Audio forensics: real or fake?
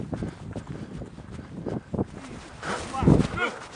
real